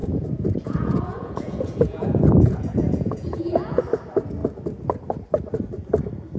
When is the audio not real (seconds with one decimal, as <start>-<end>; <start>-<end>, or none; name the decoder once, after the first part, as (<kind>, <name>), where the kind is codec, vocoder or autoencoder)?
0.0-3.8 (vocoder, Vocos)